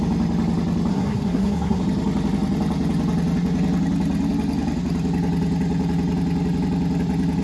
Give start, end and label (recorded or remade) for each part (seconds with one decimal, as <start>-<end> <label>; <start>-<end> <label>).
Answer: 0.0-0.9 recorded; 0.9-1.8 remade; 1.8-7.4 recorded

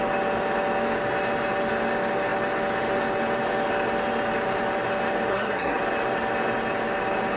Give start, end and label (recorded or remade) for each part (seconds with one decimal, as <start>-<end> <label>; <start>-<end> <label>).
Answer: 0.0-5.3 recorded; 5.3-5.8 remade; 5.8-7.4 recorded

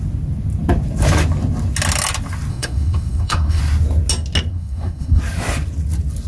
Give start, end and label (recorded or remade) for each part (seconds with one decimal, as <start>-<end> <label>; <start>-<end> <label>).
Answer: 0.0-2.5 recorded; 2.5-3.6 remade; 3.6-4.5 recorded; 4.5-5.2 remade; 5.2-6.3 recorded

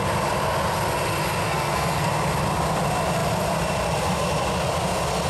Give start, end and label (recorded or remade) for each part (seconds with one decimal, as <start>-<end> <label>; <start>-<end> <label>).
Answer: 0.0-1.4 recorded; 1.4-2.1 remade; 2.1-5.3 recorded

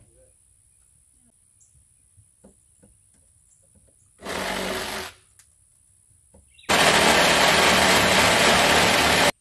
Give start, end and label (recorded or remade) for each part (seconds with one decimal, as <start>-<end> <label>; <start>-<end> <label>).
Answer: 0.0-9.4 recorded

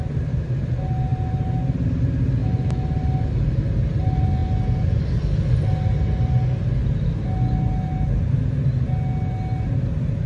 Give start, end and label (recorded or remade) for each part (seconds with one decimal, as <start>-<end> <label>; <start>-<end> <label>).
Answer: 0.0-10.3 recorded

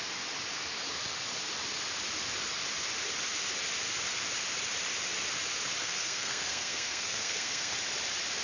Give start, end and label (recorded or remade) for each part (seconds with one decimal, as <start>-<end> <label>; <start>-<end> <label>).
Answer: 0.0-5.8 recorded; 5.8-7.7 remade; 7.7-8.4 recorded